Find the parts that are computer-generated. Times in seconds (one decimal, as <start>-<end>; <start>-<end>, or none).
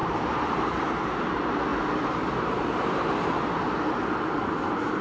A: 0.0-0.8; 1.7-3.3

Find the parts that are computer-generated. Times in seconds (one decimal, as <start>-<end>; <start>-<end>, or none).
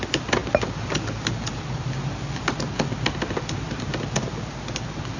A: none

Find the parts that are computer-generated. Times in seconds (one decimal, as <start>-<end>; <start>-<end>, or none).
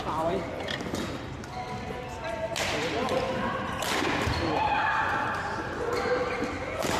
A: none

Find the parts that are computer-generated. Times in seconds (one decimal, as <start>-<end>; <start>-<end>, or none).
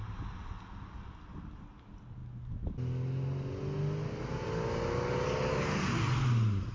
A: none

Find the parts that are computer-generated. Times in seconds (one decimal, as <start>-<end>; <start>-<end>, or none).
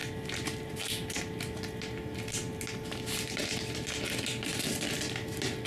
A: none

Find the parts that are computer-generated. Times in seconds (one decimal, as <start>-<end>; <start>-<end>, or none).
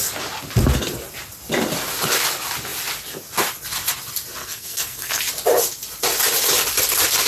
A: 4.4-5.2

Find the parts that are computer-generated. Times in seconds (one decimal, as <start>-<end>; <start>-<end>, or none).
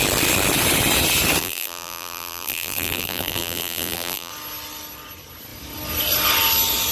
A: 1.4-4.3